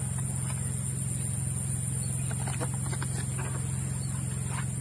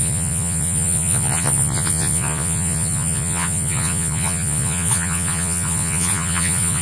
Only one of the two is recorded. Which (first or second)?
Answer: first